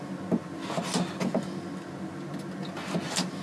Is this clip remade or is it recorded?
recorded